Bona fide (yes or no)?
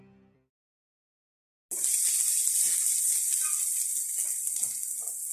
yes